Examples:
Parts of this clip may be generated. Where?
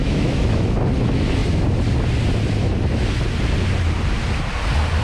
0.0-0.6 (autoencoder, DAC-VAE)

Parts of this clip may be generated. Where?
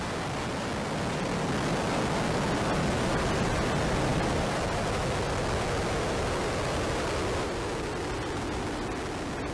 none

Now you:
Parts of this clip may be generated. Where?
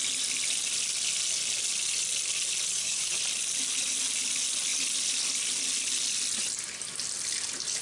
2.7-3.2 (codec, DAC)